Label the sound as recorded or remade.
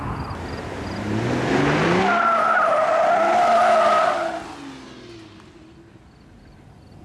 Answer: recorded